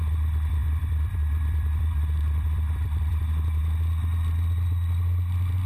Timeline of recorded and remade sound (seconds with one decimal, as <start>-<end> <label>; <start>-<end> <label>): 0.0-3.6 remade; 3.6-5.7 recorded